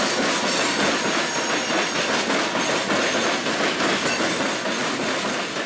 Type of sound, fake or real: real